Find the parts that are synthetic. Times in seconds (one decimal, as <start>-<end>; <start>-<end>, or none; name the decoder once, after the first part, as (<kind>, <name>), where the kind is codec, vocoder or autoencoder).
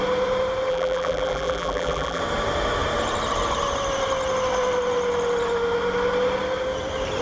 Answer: 0.7-2.2 (vocoder, BigVGAN v2)